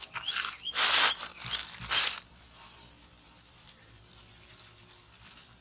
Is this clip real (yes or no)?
no